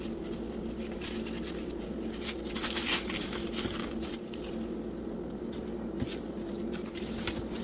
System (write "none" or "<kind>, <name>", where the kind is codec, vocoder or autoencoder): none